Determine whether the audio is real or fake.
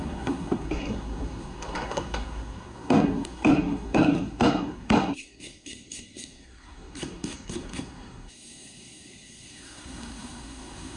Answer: fake